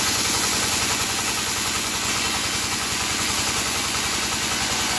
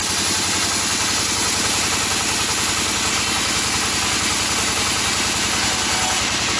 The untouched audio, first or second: second